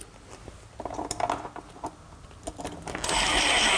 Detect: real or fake real